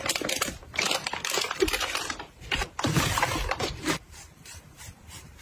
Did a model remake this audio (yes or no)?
yes